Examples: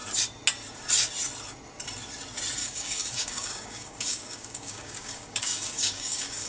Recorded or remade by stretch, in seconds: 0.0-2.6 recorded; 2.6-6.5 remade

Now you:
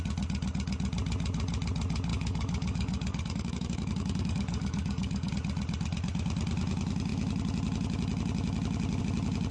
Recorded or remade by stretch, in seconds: 0.0-2.1 recorded; 2.1-5.3 remade; 5.3-9.5 recorded

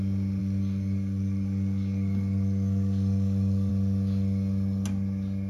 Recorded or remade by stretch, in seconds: 0.0-0.4 recorded; 0.4-3.7 remade; 3.7-5.5 recorded

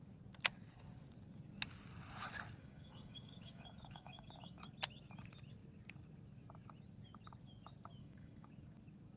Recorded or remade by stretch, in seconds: 0.0-2.6 recorded; 2.6-4.6 remade; 4.6-8.0 recorded; 8.0-8.5 remade; 8.5-9.2 recorded